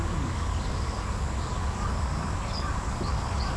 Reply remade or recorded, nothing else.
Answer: remade